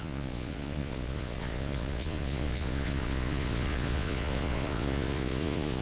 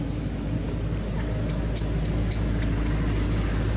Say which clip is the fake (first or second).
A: first